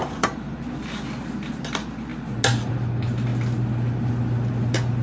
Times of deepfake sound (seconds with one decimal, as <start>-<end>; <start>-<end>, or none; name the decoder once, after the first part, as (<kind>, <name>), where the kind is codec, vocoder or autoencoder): 0.0-1.6 (vocoder, BigVGAN v2)